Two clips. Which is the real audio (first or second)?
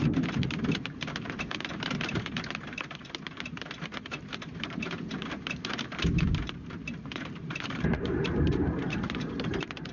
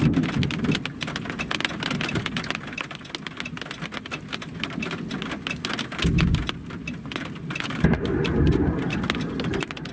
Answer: second